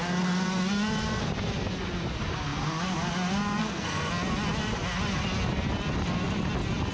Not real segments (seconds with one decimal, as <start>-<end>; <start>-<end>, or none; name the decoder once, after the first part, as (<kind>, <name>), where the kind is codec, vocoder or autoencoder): 3.6-4.1 (codec, SNAC)